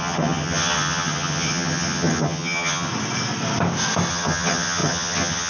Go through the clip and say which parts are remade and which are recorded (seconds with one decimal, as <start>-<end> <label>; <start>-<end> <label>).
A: 0.0-2.9 remade; 2.9-4.1 recorded; 4.1-5.5 remade